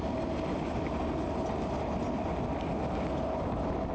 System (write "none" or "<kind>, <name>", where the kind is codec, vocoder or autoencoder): none